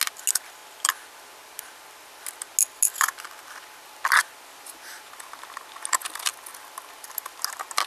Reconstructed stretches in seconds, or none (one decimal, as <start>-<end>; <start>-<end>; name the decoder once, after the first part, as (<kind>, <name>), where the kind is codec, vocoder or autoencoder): none